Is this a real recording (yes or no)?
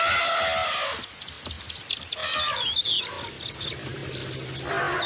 yes